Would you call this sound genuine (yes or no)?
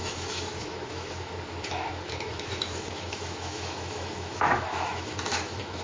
no